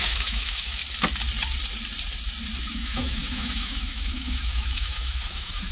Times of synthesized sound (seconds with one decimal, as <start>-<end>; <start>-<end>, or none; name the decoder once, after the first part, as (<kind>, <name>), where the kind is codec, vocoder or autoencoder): 0.0-0.8 (autoencoder, DAC-VAE); 2.6-5.7